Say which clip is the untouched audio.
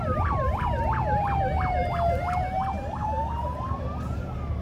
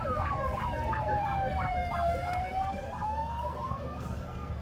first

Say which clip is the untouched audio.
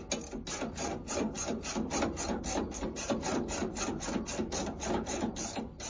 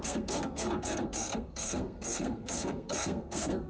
first